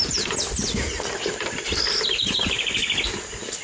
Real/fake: real